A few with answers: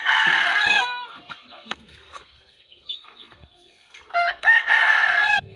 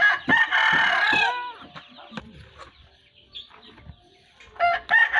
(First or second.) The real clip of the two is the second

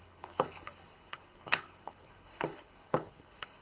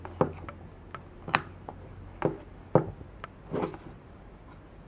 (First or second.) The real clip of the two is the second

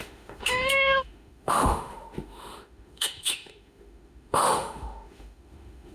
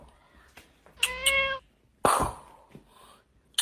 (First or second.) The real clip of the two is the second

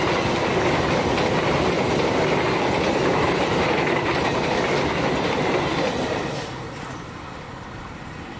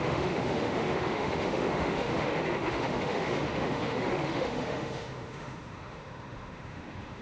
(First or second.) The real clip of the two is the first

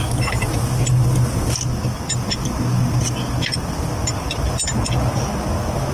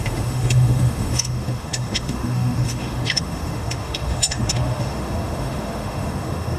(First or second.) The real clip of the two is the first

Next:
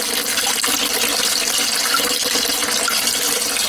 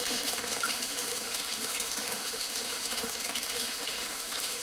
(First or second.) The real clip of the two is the first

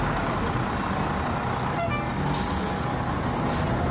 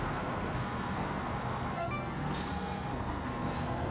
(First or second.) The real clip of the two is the first